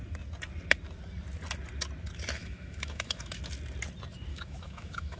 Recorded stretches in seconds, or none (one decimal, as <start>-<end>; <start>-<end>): 0.0-2.4; 3.4-4.3